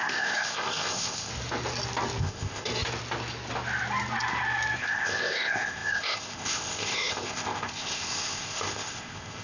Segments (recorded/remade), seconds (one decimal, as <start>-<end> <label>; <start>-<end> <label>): 0.0-1.3 remade; 1.3-2.2 recorded; 2.2-2.7 remade; 2.7-4.8 recorded; 4.8-9.4 remade